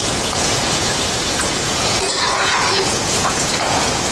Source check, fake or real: fake